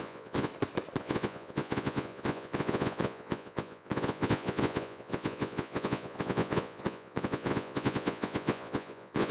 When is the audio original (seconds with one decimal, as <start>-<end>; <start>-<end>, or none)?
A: 0.5-1.0